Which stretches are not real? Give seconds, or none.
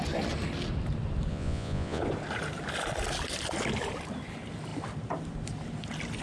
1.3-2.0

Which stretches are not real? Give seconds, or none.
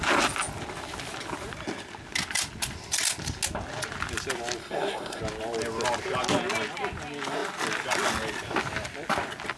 4.6-5.2